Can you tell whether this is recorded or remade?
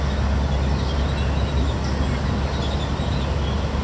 recorded